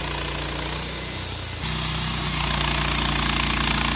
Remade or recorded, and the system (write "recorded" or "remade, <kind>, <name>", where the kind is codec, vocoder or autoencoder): recorded